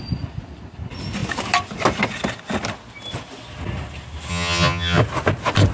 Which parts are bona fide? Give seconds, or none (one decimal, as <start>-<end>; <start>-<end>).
0.0-4.3; 5.0-5.7